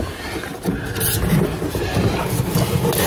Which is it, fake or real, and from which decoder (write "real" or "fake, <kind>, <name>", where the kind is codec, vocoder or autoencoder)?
real